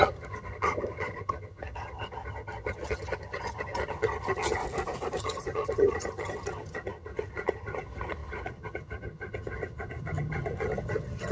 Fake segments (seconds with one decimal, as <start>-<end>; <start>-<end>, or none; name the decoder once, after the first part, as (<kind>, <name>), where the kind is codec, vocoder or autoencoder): 0.0-4.6 (vocoder, HiFi-GAN); 5.2-11.3